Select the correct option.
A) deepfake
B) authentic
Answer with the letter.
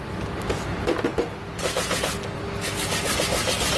B